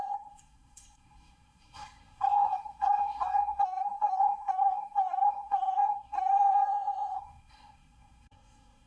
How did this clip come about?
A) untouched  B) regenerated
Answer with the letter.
B